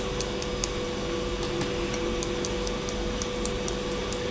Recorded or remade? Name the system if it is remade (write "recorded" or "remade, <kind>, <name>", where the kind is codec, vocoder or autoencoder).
recorded